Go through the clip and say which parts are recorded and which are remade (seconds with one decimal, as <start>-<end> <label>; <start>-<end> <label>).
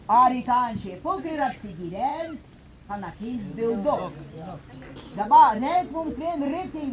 0.0-6.9 recorded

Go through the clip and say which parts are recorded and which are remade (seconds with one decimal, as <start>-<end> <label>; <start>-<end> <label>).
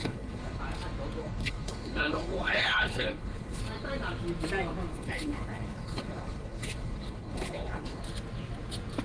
0.0-0.6 remade; 0.6-1.2 recorded; 1.2-3.6 remade; 3.6-4.9 recorded; 4.9-8.0 remade; 8.0-9.0 recorded